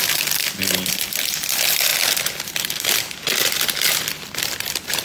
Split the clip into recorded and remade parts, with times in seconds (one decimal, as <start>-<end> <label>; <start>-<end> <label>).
0.0-5.0 remade